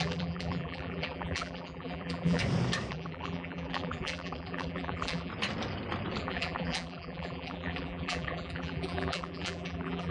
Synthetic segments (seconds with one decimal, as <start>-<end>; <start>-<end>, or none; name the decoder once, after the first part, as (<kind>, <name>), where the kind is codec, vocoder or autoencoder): 0.0-2.4 (vocoder, BigVGAN v2); 2.9-5.3; 6.2-10.1